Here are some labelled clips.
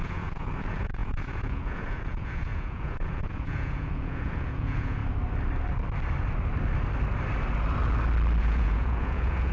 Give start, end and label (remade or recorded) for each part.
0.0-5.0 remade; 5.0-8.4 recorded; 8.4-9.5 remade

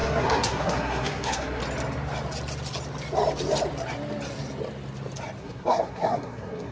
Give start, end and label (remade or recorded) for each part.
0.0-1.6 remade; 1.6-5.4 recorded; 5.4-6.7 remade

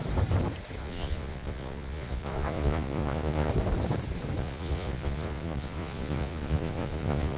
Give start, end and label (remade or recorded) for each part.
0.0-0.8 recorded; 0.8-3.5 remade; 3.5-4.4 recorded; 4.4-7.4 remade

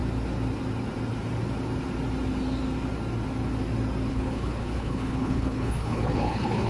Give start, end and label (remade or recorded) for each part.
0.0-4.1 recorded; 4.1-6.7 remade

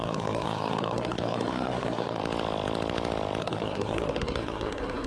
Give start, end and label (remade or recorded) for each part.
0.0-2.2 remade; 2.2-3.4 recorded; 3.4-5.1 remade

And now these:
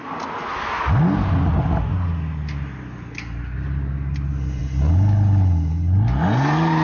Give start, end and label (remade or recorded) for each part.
0.0-6.8 recorded

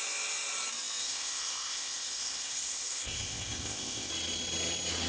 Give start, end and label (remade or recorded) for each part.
0.0-1.0 recorded; 1.0-4.1 remade; 4.1-5.1 recorded

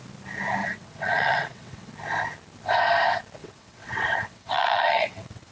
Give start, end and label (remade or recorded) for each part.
0.0-0.6 recorded; 0.6-1.9 remade; 1.9-3.4 recorded; 3.4-5.5 remade